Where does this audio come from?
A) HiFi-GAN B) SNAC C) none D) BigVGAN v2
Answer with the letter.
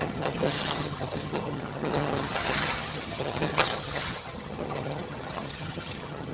A